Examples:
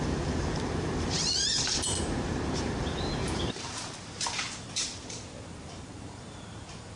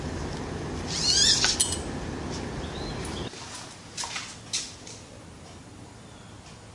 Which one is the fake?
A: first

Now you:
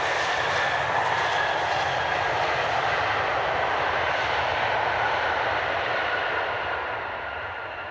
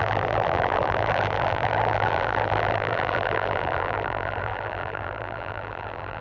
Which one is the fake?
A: second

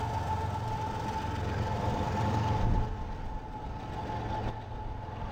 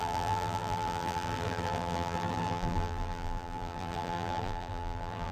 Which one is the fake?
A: second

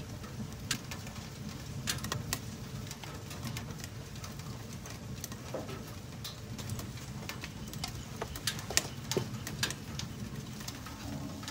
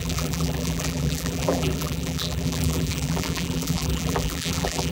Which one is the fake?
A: second